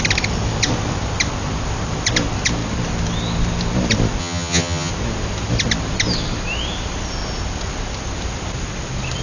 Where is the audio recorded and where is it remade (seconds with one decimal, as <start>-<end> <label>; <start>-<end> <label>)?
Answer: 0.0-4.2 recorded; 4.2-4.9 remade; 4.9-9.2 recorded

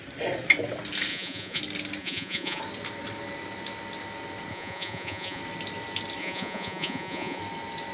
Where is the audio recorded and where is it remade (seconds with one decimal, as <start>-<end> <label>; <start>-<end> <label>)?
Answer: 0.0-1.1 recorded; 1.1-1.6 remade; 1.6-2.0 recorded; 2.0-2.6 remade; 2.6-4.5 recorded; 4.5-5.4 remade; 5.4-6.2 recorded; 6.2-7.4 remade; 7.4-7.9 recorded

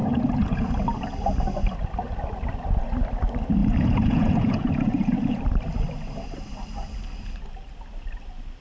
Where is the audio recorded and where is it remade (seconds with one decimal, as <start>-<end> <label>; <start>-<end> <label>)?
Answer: 0.0-0.7 remade; 0.7-3.6 recorded; 3.6-5.4 remade; 5.4-8.6 recorded

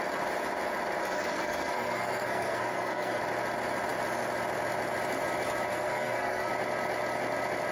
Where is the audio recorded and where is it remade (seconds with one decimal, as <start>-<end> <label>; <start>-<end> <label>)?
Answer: 0.0-1.0 recorded; 1.0-3.2 remade; 3.2-5.7 recorded; 5.7-6.5 remade; 6.5-7.7 recorded

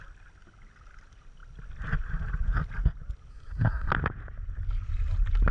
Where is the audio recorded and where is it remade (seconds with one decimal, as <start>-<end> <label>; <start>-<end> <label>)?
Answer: 0.0-3.3 recorded; 3.3-3.9 remade; 3.9-5.5 recorded

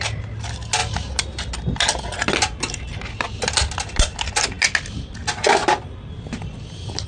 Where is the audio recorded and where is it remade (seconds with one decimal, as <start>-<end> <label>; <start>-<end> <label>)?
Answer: 0.0-5.6 recorded; 5.6-6.2 remade; 6.2-7.1 recorded

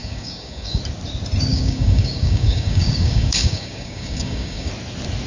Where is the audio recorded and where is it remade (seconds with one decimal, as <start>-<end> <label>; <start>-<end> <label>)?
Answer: 0.0-0.8 remade; 0.8-1.5 recorded; 1.5-4.7 remade; 4.7-5.3 recorded